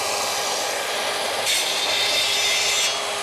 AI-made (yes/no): no